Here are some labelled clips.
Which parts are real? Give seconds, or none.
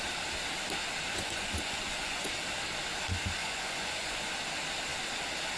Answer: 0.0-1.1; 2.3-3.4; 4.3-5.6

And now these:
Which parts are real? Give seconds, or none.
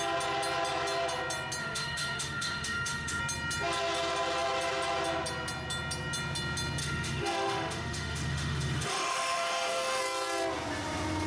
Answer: 0.0-1.6; 3.2-6.8; 10.0-11.3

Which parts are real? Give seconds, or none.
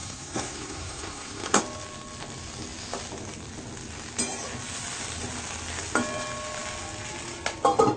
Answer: 1.6-8.0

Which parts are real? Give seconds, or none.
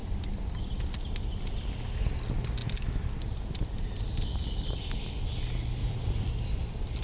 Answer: 0.0-5.8; 6.3-7.0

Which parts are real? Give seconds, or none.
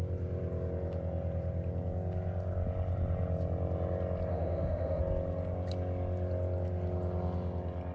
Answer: 0.0-4.3; 5.0-7.9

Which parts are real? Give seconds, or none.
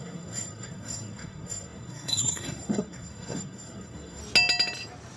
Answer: 4.2-5.2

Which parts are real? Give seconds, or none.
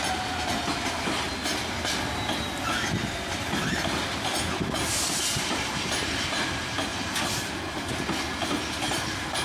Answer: 0.0-9.4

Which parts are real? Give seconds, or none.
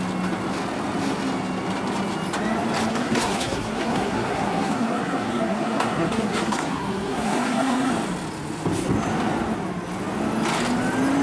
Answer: 0.0-2.9; 7.9-11.2